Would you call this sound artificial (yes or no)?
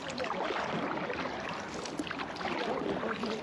no